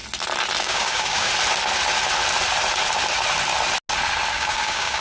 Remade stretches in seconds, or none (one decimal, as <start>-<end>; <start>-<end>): 0.6-1.3; 4.3-5.0